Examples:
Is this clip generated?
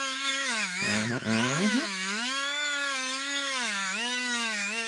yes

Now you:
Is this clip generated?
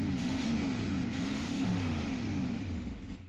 yes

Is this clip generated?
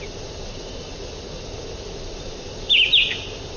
no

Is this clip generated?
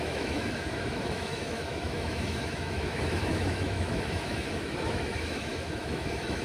yes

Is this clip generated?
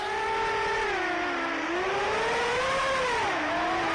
no